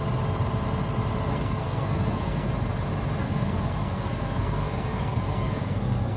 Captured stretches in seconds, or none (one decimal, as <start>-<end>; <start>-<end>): 0.0-1.3; 2.5-3.2